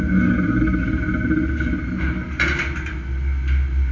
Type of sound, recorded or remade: recorded